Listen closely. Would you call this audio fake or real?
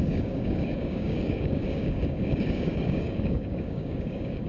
fake